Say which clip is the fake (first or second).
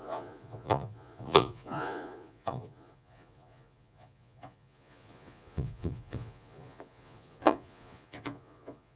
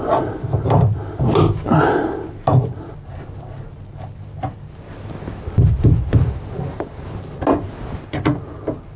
first